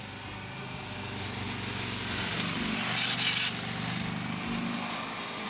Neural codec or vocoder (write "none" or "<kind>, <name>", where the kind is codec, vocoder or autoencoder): none